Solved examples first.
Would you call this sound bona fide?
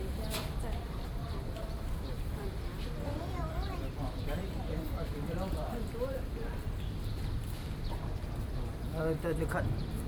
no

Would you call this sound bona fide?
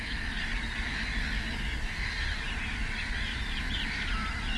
yes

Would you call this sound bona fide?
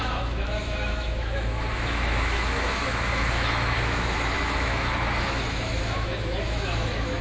no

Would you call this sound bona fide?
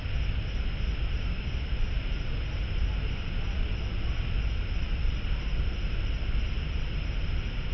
yes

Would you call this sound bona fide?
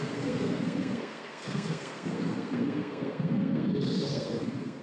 no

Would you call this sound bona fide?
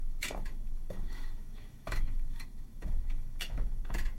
no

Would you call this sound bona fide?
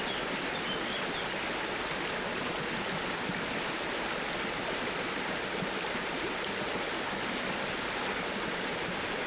yes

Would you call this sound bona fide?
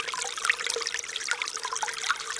yes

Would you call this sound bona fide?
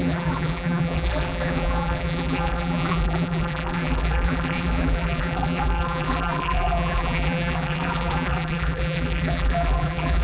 no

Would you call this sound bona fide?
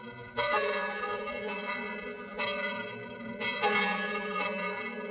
no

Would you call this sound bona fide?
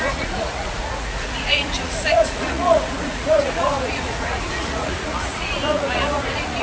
no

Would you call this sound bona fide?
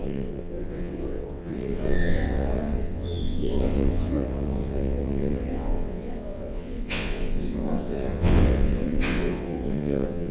no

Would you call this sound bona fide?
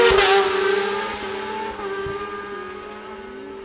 yes